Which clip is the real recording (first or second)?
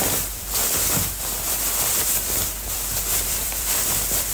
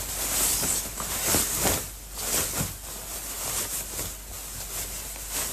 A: second